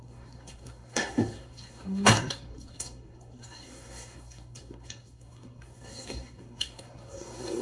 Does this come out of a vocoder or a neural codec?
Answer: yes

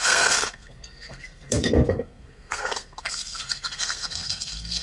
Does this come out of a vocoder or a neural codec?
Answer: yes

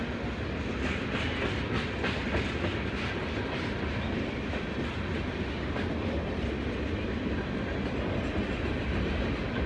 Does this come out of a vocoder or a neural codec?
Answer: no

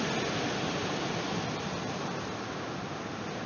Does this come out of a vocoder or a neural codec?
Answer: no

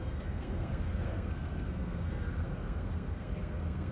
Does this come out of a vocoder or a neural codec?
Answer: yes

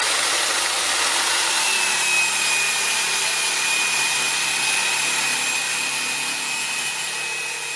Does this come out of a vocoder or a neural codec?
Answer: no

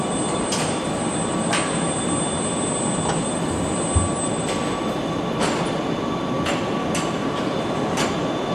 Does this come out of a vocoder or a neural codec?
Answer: no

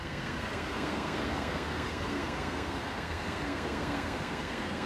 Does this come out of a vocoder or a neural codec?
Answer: yes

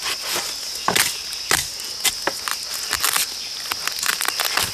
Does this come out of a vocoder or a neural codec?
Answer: no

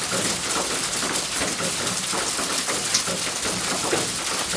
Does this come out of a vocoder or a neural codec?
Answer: no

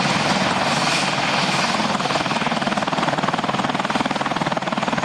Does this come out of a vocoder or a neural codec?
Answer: no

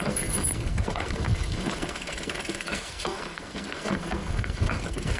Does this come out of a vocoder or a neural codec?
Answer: yes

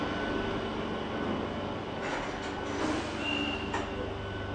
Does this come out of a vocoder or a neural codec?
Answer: no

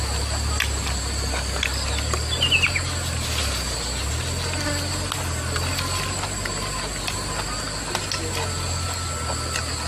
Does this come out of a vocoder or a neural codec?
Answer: no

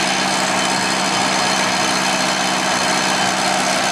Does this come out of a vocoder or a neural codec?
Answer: no